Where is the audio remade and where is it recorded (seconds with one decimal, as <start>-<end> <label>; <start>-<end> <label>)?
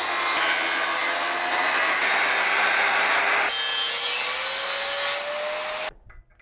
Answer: 0.0-6.4 recorded